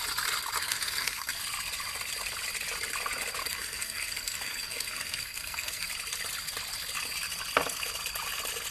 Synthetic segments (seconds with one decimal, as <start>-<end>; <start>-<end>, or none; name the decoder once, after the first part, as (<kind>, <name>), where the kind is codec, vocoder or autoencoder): 0.6-1.4 (codec, SNAC); 3.4-5.9